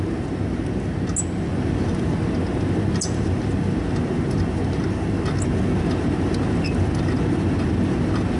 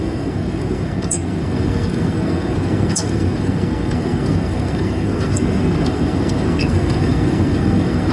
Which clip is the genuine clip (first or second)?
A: first